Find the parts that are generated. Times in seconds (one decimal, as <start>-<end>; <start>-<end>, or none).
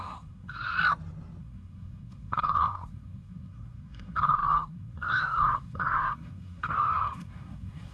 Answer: 0.0-0.8; 1.4-7.9